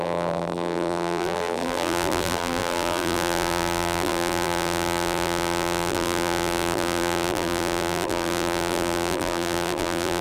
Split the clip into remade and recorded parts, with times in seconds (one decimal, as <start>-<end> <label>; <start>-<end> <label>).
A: 0.0-10.2 remade

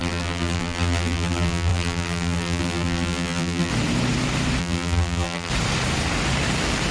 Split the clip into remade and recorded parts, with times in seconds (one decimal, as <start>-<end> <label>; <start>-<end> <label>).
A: 0.0-3.7 remade; 3.7-4.6 recorded; 4.6-5.5 remade; 5.5-6.9 recorded

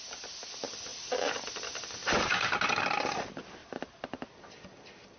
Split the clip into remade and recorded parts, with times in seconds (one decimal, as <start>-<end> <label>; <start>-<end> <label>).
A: 0.0-0.9 recorded; 0.9-1.6 remade; 1.6-2.0 recorded; 2.0-2.8 remade; 2.8-3.6 recorded; 3.6-4.6 remade; 4.6-5.2 recorded

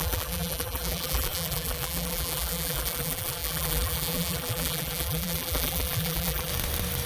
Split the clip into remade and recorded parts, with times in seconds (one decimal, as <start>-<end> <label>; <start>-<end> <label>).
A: 0.0-6.5 remade; 6.5-7.1 recorded